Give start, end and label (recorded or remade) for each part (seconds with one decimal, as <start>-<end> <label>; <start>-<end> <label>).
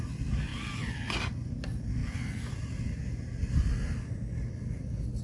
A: 0.0-5.2 recorded